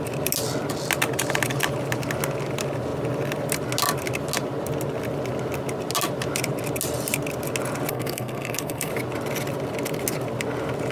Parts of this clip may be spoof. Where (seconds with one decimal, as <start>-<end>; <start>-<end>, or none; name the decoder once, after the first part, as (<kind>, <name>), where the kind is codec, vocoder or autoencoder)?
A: 7.9-8.9 (codec, SNAC)